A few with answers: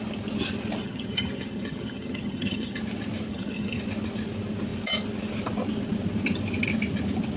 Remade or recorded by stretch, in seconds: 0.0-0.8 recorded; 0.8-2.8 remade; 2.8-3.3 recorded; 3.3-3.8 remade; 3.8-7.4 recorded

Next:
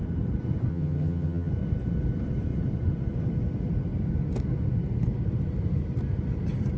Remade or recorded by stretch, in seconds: 0.0-0.7 recorded; 0.7-1.5 remade; 1.5-6.8 recorded

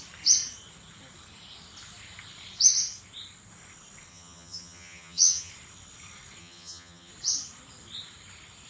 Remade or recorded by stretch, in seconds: 0.0-4.1 recorded; 4.1-5.5 remade; 5.5-6.4 recorded; 6.4-7.1 remade; 7.1-8.7 recorded